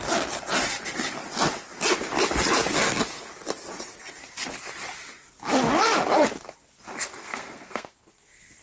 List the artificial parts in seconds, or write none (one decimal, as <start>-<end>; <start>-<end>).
7.2-8.6